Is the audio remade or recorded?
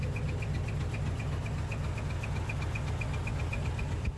recorded